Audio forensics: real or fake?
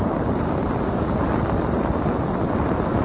real